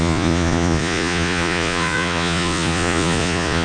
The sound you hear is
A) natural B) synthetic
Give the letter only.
B